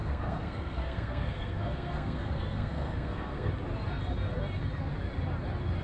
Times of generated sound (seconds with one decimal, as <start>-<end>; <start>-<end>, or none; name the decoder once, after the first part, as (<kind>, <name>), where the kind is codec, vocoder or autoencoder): 0.0-3.5 (codec, SNAC)